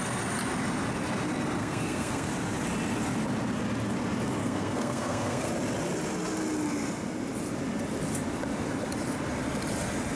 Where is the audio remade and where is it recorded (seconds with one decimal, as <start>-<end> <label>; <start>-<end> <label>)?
0.0-1.6 recorded; 1.6-2.3 remade; 2.3-4.4 recorded; 4.4-5.5 remade; 5.5-10.2 recorded